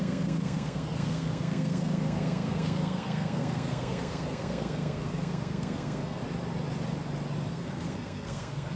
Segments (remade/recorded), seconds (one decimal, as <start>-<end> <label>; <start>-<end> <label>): 0.0-6.2 remade; 6.2-7.5 recorded; 7.5-8.8 remade